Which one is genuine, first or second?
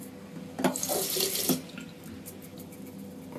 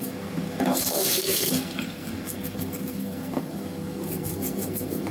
first